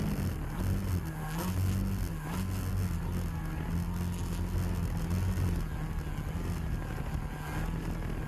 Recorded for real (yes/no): yes